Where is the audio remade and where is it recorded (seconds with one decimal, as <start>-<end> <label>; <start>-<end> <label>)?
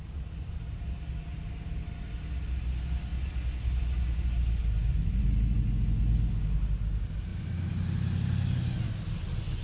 0.0-9.6 recorded